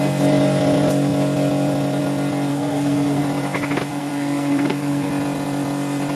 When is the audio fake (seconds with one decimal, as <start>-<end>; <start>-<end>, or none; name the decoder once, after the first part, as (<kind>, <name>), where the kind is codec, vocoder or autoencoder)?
2.5-3.2 (codec, SNAC); 3.9-5.1